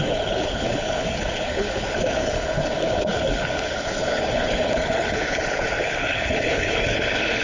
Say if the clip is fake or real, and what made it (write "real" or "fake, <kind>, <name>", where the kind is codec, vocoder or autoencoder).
fake, codec, HILCodec